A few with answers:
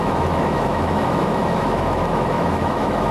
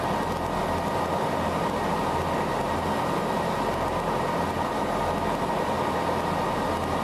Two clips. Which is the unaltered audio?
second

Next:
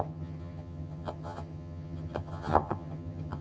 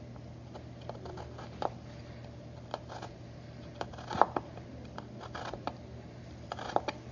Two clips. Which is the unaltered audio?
second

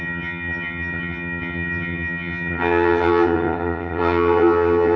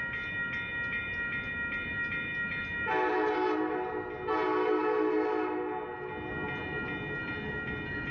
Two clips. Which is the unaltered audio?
second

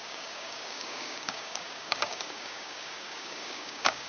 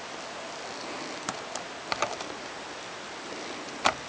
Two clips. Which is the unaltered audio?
second